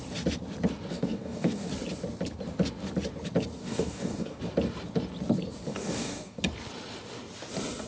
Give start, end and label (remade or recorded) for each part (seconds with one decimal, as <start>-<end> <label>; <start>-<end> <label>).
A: 0.0-0.9 recorded; 0.9-1.7 remade; 1.7-3.6 recorded; 3.6-4.4 remade; 4.4-5.7 recorded; 5.7-6.4 remade; 6.4-7.9 recorded